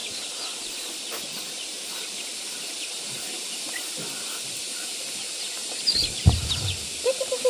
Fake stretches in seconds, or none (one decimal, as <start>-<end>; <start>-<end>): 4.5-7.5